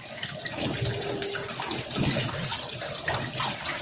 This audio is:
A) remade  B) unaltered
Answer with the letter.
B